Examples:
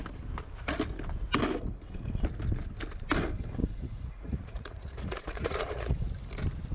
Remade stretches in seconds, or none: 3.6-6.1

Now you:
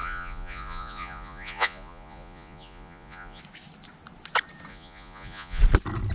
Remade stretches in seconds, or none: 0.0-3.4; 4.7-5.6